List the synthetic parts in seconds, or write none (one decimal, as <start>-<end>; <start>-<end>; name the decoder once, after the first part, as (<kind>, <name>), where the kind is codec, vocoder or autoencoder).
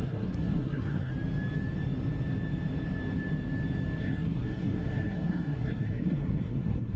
0.0-1.1 (codec, SNAC); 4.0-7.0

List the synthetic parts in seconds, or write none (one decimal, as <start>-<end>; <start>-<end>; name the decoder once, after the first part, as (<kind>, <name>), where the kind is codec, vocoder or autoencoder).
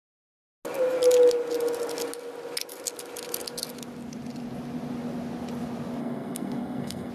6.0-7.1 (codec, SNAC)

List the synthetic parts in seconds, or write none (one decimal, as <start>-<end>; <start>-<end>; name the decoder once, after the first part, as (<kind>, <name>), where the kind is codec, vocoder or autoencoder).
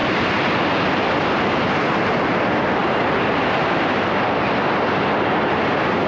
none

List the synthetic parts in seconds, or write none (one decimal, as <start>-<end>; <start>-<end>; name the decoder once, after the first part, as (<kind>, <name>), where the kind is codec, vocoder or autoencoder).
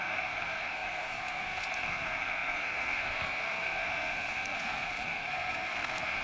0.0-6.2 (codec, SNAC)